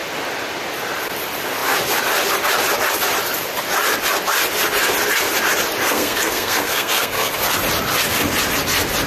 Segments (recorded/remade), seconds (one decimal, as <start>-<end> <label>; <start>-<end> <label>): 0.0-5.8 recorded; 5.8-7.3 remade; 7.3-9.1 recorded